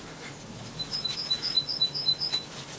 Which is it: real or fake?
real